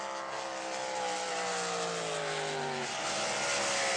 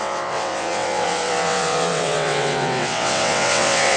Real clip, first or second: first